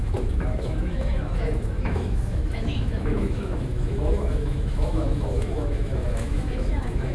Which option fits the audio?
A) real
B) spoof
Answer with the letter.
B